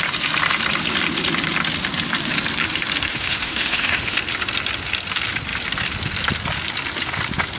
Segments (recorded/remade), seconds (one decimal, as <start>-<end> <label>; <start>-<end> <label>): 0.0-3.1 recorded; 3.1-4.2 remade; 4.2-7.6 recorded